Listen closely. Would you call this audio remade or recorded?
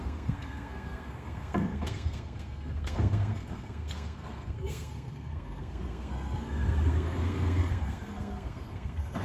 remade